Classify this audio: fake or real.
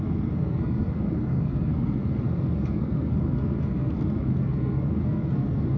fake